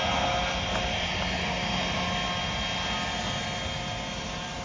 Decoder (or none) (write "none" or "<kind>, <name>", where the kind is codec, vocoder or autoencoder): none